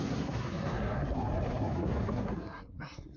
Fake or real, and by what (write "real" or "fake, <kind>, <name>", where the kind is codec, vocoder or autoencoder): fake, codec, SNAC